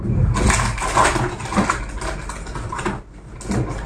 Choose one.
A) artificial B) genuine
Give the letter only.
B